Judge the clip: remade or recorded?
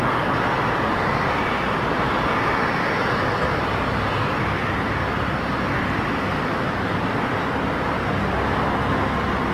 recorded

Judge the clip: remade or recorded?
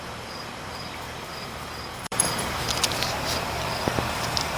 remade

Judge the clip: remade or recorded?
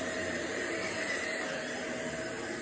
remade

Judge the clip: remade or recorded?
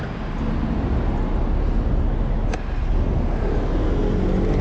recorded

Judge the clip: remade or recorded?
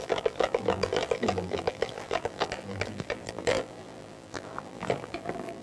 remade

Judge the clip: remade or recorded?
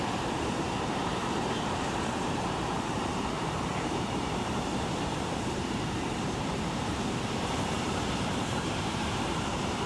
remade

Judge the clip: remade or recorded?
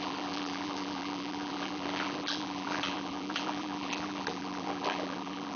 remade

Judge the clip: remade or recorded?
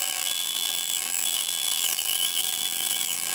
remade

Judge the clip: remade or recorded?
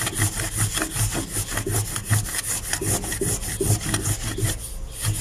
recorded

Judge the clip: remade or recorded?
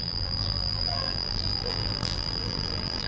remade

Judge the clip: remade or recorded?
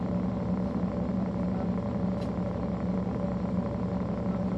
recorded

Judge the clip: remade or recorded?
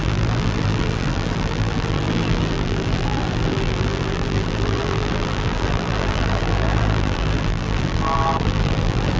remade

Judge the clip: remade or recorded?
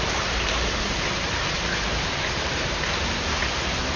remade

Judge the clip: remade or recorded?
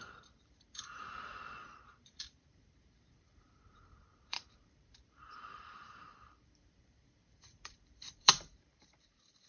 remade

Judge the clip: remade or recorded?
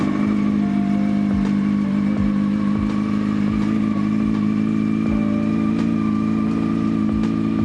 recorded